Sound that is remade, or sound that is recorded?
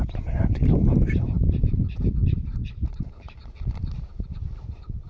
remade